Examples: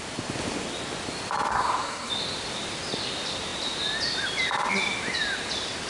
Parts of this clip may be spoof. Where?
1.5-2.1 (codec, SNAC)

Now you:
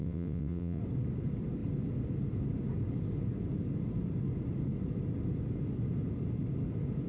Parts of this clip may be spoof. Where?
0.0-0.8 (vocoder, WaveNeXt)

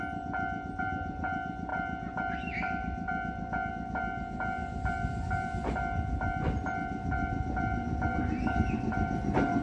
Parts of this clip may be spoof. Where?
none

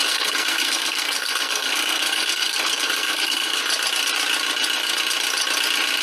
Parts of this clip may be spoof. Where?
0.0-3.6 (codec, SNAC)

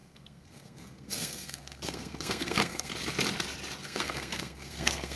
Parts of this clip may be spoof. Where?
0.0-2.9 (codec, SNAC); 3.8-5.2

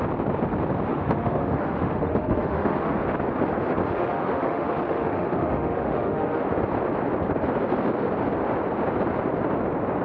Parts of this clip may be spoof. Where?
0.9-3.0 (autoencoder, DAC-VAE); 3.8-6.4

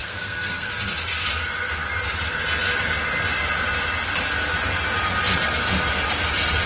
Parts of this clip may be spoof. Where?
0.0-0.7 (codec, SNAC)